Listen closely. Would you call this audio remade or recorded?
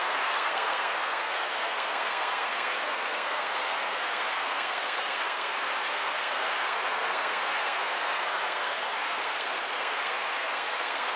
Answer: remade